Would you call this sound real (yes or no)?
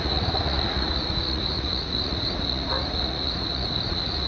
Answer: no